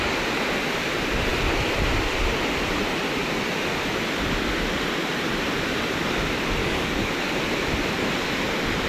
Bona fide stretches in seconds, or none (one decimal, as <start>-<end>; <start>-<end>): 0.0-6.6; 7.1-8.9